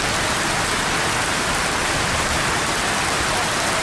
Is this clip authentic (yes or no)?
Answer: yes